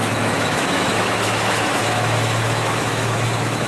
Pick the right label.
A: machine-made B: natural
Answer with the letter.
A